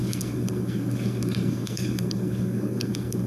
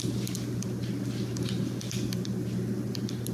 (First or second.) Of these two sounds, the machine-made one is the first